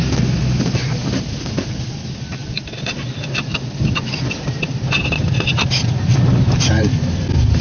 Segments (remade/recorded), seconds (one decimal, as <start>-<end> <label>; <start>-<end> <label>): 0.0-7.6 recorded